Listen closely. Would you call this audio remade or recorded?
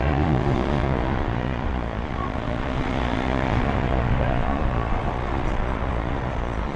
remade